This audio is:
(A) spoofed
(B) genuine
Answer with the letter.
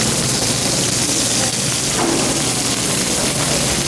B